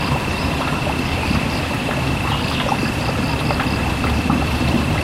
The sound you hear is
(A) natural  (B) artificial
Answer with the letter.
B